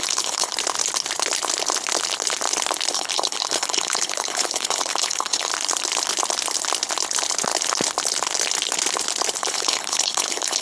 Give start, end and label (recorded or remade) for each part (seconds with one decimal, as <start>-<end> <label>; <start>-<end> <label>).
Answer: 0.0-0.5 remade; 0.5-2.9 recorded; 2.9-5.5 remade; 5.5-9.4 recorded; 9.4-10.6 remade